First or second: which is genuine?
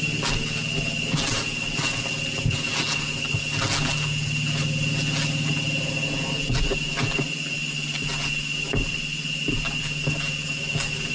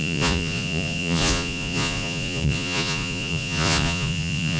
first